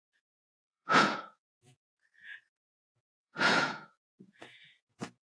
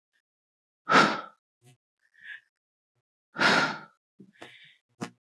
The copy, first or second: first